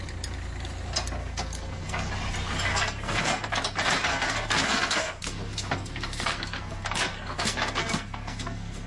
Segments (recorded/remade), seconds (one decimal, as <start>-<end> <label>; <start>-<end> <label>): 0.0-1.2 recorded; 1.2-2.1 remade; 2.1-2.7 recorded; 2.7-3.5 remade; 3.5-4.1 recorded; 4.1-8.9 remade